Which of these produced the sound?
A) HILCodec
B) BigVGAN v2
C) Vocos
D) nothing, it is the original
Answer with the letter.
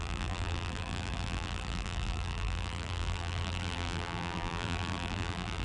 B